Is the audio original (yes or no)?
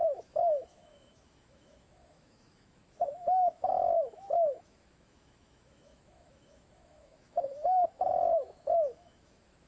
no